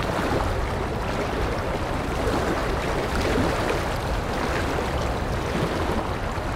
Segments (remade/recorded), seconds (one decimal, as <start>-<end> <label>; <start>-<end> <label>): 0.0-6.6 recorded